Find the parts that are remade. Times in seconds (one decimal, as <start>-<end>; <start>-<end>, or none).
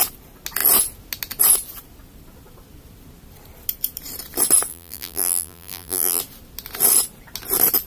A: 4.7-6.2